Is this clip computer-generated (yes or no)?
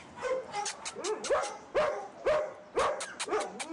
no